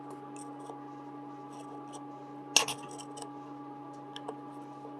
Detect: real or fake real